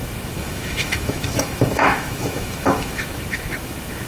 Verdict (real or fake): fake